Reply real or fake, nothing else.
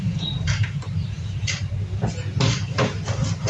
fake